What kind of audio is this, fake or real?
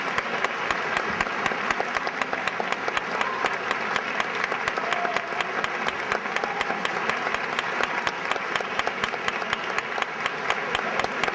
real